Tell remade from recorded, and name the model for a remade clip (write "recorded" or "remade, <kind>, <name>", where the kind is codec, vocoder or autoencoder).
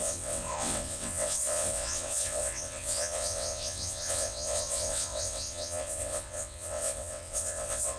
remade, vocoder, WaveNeXt